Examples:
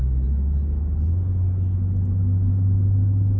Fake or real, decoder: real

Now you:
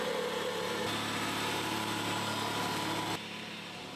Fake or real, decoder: real